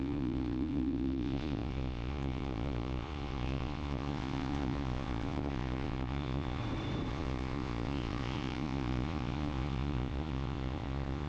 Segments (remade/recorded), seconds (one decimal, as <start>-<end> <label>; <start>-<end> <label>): 0.0-6.6 remade; 6.6-7.1 recorded; 7.1-11.3 remade